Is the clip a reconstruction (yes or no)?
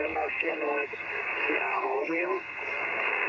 yes